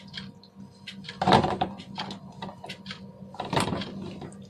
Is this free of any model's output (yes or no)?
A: no